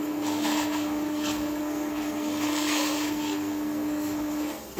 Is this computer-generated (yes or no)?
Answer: yes